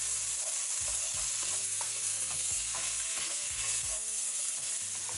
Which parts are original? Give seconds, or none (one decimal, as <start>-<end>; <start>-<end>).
0.0-1.6; 4.7-5.2